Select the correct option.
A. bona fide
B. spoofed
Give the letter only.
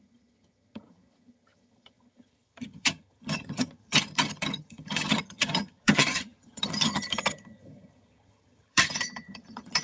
B